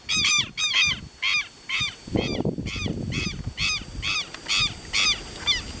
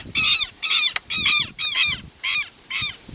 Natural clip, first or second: first